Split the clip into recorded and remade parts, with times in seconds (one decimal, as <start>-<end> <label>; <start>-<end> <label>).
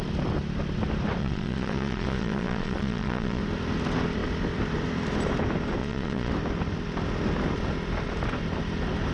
0.0-1.2 recorded; 1.2-3.4 remade; 3.4-5.8 recorded; 5.8-6.3 remade; 6.3-9.1 recorded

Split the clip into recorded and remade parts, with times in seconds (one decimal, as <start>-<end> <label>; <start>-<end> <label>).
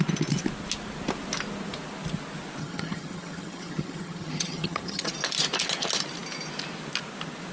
0.0-2.6 recorded; 2.6-5.1 remade; 5.1-7.5 recorded